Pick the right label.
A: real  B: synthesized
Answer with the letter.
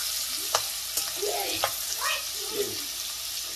A